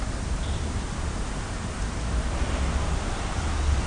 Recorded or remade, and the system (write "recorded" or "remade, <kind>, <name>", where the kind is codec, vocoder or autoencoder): recorded